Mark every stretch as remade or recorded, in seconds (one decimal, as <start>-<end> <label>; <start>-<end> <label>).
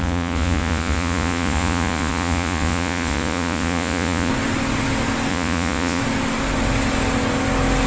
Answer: 0.0-4.3 remade; 4.3-5.3 recorded; 5.3-6.0 remade; 6.0-7.9 recorded